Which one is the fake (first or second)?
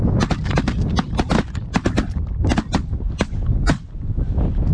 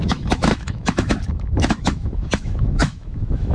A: second